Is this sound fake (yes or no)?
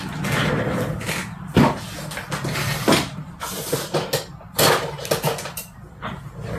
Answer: no